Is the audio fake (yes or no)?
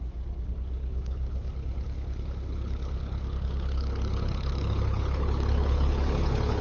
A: yes